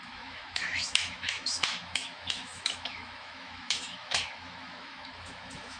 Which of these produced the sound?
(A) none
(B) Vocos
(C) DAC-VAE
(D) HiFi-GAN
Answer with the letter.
C